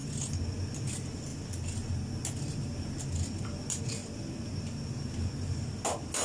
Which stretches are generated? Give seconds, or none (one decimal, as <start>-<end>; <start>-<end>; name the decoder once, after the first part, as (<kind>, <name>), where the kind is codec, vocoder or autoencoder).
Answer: none